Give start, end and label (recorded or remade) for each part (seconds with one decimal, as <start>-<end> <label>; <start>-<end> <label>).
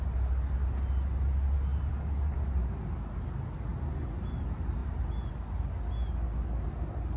0.0-7.2 recorded